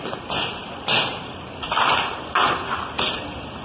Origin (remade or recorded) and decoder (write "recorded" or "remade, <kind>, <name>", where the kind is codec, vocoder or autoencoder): recorded